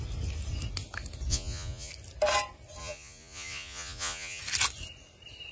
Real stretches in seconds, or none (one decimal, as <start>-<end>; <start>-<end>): 0.0-1.3; 1.9-2.8; 4.4-5.5